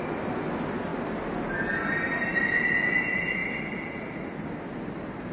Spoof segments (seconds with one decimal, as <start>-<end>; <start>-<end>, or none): none